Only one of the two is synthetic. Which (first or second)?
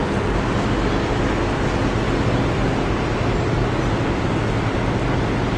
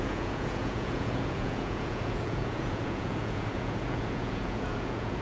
second